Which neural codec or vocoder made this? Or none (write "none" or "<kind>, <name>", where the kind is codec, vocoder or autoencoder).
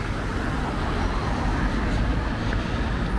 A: none